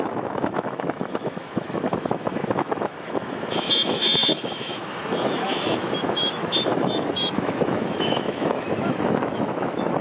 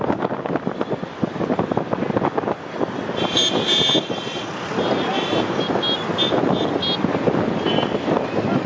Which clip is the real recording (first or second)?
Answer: second